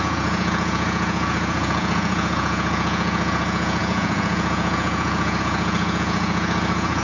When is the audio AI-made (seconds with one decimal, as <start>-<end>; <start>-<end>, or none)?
0.0-7.0